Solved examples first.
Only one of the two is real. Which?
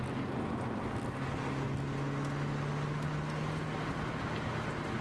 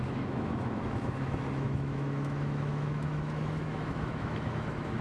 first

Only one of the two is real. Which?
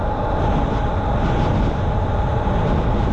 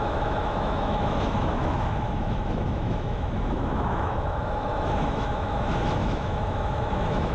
first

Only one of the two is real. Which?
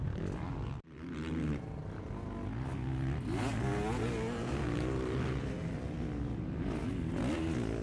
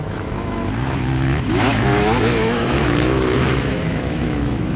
first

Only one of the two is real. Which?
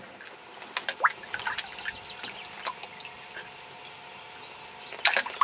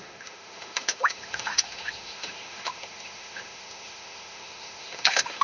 first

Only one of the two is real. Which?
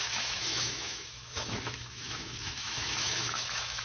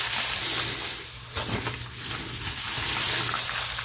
second